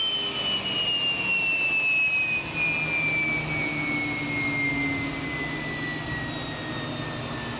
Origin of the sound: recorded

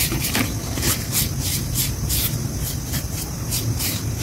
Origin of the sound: remade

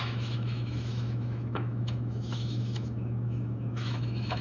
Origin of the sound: remade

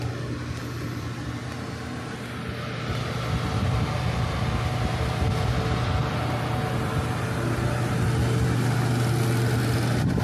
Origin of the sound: recorded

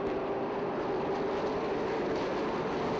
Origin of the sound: recorded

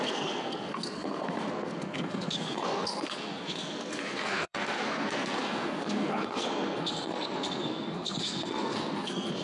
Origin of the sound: remade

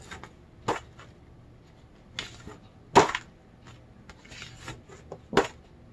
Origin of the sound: recorded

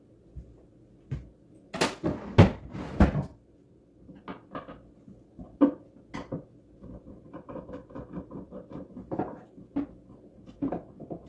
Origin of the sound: recorded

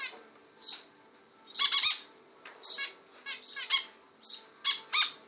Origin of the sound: recorded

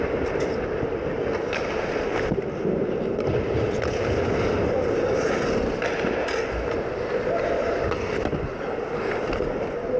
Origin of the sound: recorded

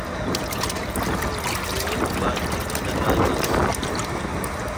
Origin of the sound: recorded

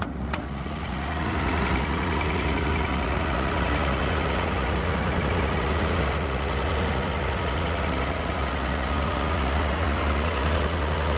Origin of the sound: remade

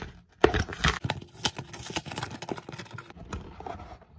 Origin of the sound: recorded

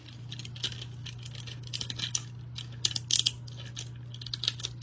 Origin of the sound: recorded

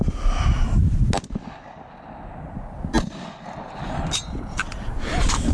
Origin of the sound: recorded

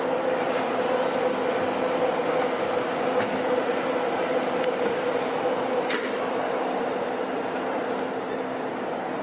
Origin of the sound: recorded